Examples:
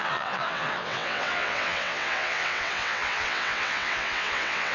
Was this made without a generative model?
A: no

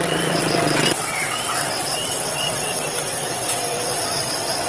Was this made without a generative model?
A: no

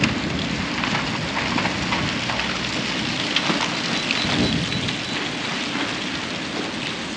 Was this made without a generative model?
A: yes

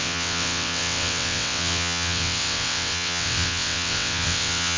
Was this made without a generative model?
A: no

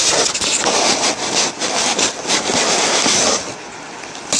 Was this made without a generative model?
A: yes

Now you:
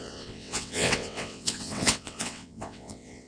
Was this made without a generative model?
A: no